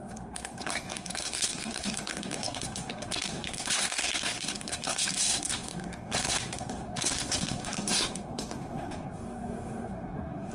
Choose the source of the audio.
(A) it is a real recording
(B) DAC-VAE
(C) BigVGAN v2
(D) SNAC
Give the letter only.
D